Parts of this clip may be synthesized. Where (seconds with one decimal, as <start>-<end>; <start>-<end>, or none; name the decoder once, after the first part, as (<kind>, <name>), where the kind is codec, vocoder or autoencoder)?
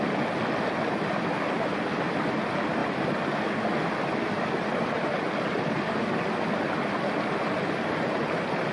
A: none